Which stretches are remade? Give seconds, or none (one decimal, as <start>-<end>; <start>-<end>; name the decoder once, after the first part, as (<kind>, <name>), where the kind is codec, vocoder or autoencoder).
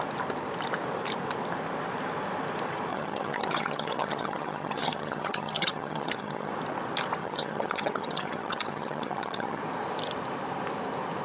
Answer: 2.9-6.5 (vocoder, HiFi-GAN); 7.2-9.6